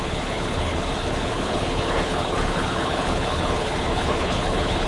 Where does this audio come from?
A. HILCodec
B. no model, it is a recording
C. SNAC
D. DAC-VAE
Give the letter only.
A